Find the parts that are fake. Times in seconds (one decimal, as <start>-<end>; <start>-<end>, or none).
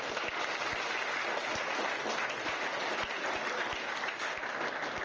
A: none